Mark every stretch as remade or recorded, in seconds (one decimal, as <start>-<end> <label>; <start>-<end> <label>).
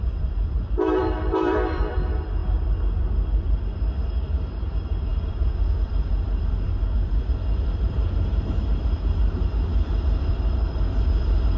0.0-2.4 remade; 2.4-3.0 recorded; 3.0-11.6 remade